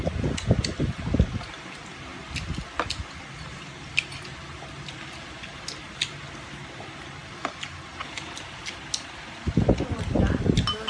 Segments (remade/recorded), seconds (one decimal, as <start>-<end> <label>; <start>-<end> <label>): 0.0-10.9 recorded